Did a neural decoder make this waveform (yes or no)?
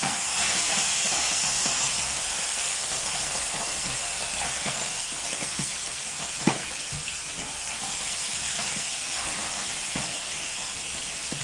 yes